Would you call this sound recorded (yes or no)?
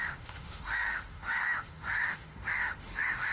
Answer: no